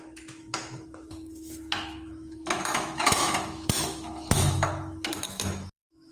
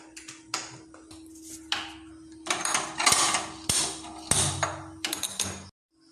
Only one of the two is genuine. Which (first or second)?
second